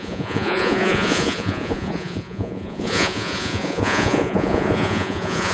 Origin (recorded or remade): remade